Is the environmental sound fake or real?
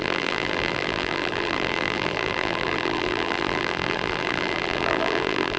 fake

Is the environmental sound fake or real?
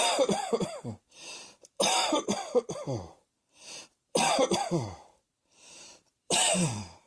fake